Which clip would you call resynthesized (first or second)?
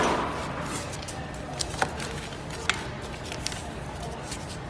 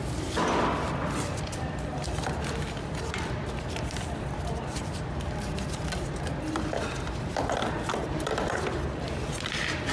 second